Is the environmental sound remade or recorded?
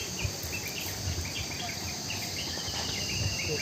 recorded